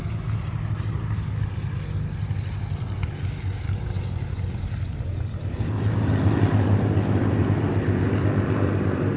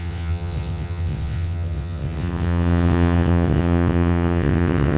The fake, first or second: second